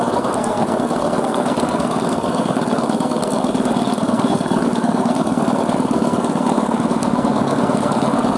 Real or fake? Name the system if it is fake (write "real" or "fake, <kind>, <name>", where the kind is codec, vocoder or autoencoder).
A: fake, codec, SNAC